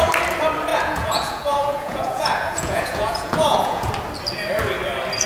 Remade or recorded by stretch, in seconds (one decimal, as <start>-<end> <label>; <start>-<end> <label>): 0.0-0.7 recorded; 0.7-3.9 remade; 3.9-5.3 recorded